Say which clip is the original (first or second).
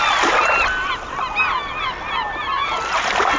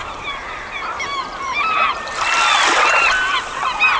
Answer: first